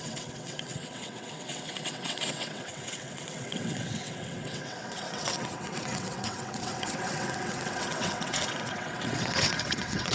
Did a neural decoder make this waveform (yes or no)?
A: yes